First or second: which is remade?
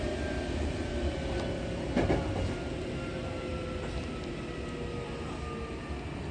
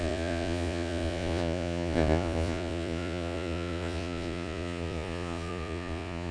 second